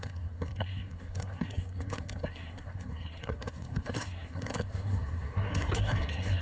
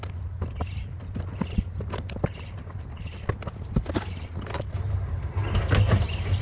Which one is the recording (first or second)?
second